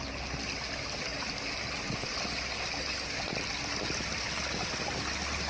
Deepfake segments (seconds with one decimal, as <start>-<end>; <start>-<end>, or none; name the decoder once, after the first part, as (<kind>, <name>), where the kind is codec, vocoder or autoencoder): none